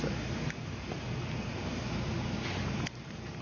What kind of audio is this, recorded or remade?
recorded